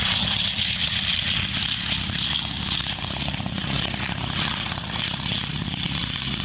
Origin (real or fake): fake